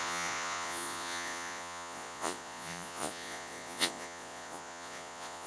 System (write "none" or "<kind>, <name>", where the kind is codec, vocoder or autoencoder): vocoder, Vocos